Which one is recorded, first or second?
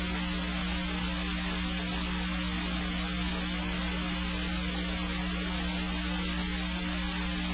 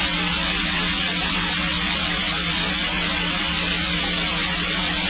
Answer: first